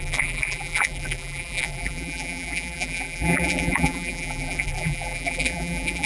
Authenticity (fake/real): fake